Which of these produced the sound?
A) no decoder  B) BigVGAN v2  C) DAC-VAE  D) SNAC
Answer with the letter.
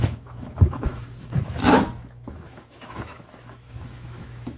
C